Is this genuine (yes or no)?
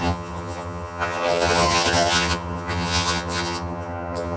no